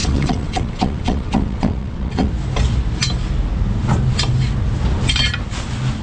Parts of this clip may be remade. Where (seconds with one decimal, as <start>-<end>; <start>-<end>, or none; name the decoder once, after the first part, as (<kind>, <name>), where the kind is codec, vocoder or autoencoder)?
0.0-2.3 (vocoder, WaveNeXt)